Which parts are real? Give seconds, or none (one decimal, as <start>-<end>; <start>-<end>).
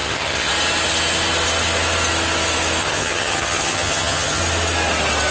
0.5-2.8; 4.4-5.3